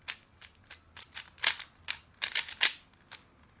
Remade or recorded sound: recorded